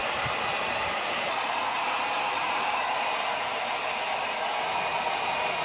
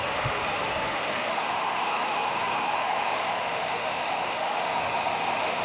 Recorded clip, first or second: first